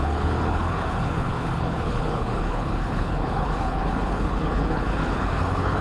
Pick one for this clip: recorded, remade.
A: remade